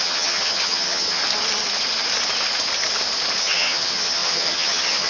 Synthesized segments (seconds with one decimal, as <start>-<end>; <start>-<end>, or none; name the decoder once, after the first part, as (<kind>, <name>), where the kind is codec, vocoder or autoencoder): 0.0-1.2 (vocoder, HiFi-GAN); 3.4-5.1